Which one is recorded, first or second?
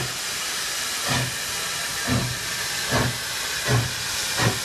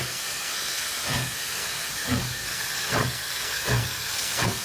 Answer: first